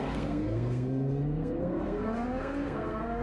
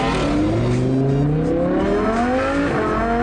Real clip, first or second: second